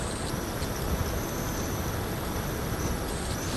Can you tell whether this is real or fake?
real